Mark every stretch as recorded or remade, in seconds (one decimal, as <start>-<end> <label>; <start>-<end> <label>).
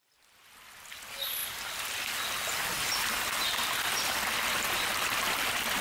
0.0-5.8 recorded